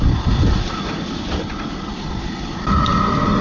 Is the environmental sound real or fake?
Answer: real